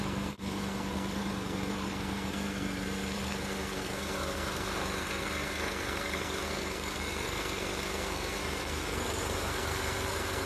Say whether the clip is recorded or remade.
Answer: remade